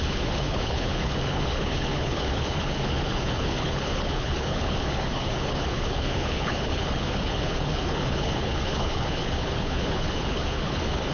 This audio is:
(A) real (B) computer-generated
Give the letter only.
B